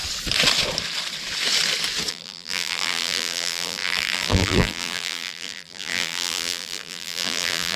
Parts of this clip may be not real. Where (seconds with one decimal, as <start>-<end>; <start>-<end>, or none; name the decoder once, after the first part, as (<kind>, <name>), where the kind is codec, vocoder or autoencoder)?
2.1-7.8 (vocoder, BigVGAN v2)